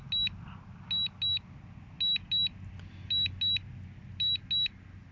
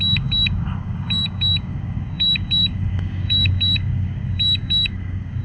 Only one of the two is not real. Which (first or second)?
second